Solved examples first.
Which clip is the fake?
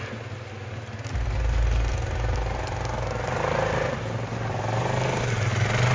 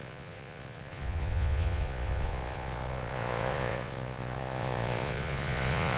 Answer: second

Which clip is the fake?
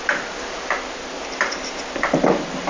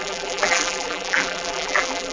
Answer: second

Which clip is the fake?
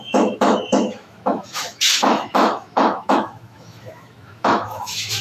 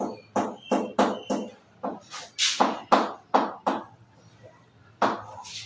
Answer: first